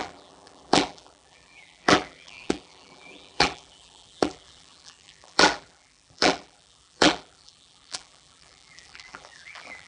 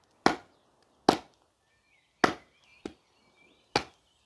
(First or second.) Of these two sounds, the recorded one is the second